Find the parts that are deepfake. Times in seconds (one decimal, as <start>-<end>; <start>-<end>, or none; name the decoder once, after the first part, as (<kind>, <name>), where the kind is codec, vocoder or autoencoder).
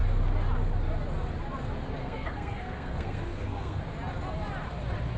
2.0-3.8 (codec, SNAC)